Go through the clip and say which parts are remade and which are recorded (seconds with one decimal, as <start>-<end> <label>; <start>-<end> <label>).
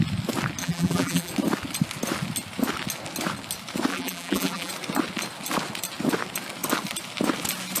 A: 0.0-0.6 recorded; 0.6-1.3 remade; 1.3-3.9 recorded; 3.9-4.7 remade; 4.7-7.8 recorded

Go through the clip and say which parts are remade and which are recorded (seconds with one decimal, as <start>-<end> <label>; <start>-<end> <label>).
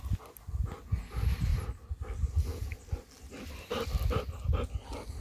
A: 0.0-5.2 recorded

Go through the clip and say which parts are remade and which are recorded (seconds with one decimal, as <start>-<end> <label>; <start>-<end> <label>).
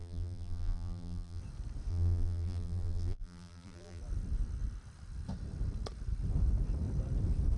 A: 0.0-1.4 remade; 1.4-1.9 recorded; 1.9-4.0 remade; 4.0-7.6 recorded